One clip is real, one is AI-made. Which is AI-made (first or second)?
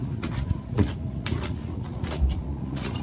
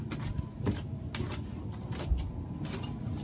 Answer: first